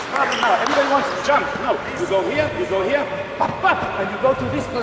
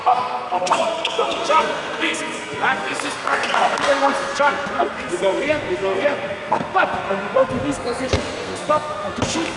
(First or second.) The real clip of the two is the first